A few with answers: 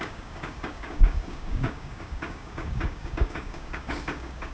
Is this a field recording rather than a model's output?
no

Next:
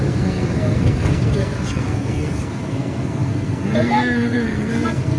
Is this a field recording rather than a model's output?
no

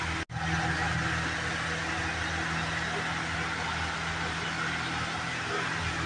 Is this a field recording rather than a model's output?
yes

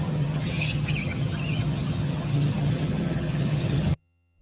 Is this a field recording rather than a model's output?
no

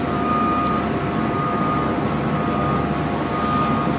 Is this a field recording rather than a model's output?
yes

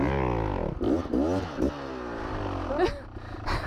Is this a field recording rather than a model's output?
yes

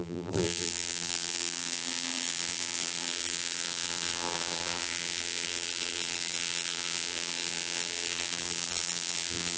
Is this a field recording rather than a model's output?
no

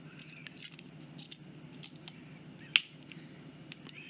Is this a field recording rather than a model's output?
yes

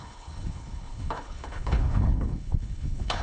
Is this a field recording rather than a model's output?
no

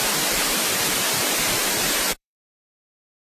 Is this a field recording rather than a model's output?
no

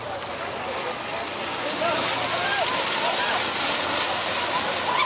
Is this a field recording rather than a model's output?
yes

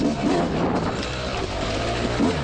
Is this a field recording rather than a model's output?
yes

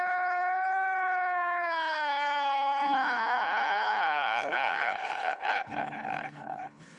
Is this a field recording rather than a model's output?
no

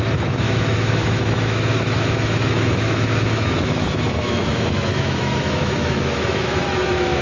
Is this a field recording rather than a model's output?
no